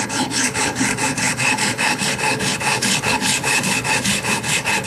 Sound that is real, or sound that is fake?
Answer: fake